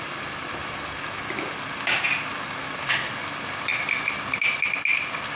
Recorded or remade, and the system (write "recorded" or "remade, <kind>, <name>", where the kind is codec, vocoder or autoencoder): recorded